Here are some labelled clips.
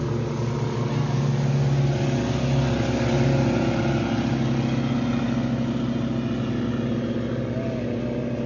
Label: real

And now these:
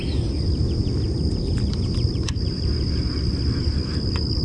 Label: real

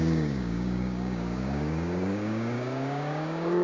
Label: fake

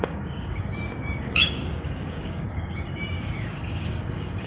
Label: fake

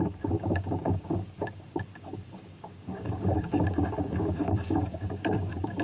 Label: fake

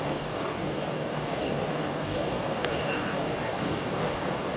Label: fake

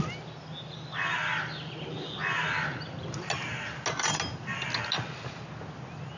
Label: real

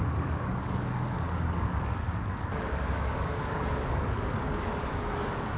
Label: fake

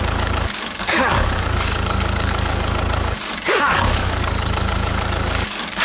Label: fake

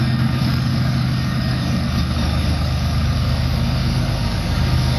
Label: fake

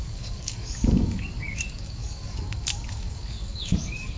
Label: fake